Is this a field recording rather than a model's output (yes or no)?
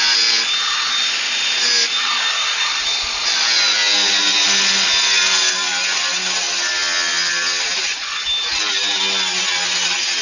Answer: yes